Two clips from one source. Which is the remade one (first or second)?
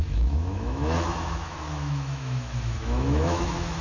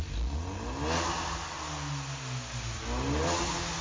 first